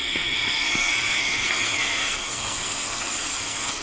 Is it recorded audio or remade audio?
remade